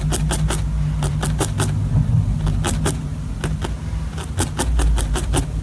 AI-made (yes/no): no